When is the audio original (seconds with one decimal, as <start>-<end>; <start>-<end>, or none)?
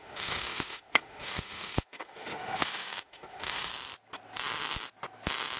3.7-5.6